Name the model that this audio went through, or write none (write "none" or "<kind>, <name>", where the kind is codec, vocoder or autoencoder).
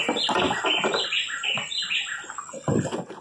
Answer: none